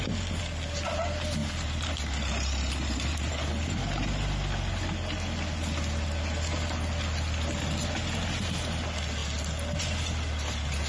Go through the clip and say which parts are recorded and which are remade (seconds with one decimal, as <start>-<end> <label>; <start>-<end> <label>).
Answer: 0.0-1.4 recorded; 1.4-3.5 remade; 3.5-10.9 recorded